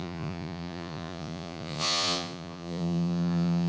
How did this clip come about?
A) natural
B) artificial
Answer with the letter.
B